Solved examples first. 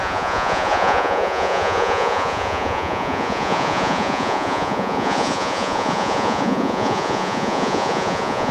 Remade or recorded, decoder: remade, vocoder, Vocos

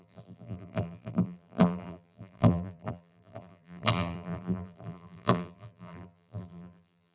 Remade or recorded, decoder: remade, vocoder, BigVGAN v2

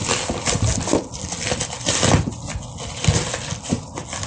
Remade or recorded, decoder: recorded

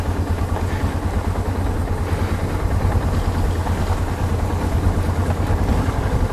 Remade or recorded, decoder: recorded